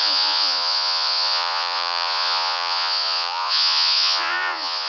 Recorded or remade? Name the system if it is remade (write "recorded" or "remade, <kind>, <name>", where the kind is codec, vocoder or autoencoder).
remade, vocoder, Vocos